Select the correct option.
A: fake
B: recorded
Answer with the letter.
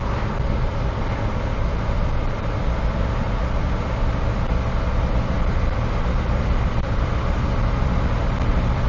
B